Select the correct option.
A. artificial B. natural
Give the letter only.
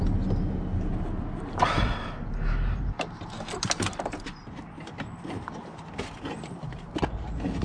B